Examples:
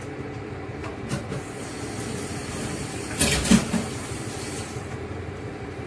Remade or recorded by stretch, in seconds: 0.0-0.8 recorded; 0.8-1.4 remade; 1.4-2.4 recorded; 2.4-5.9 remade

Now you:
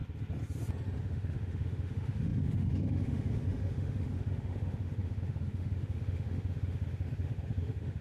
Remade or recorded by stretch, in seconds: 0.0-1.0 recorded; 1.0-8.0 remade

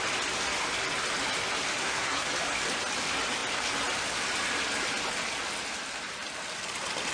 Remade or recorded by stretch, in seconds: 0.0-1.8 recorded; 1.8-2.3 remade; 2.3-7.1 recorded

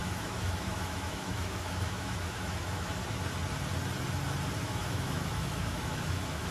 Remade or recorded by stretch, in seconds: 0.0-3.0 remade; 3.0-4.6 recorded; 4.6-6.5 remade